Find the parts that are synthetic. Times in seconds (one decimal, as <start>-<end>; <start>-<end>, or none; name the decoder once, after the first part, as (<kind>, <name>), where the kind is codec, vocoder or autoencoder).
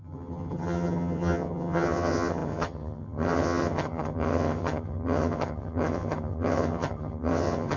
0.0-7.8 (vocoder, HiFi-GAN)